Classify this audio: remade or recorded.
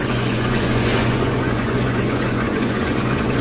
remade